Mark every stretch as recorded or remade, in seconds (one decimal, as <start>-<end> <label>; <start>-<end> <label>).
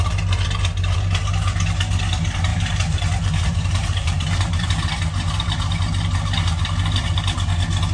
0.0-2.5 recorded; 2.5-4.7 remade; 4.7-7.9 recorded